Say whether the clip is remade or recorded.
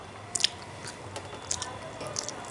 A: recorded